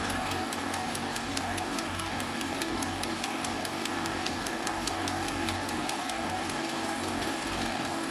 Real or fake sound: fake